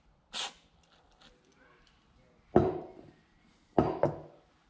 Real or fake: real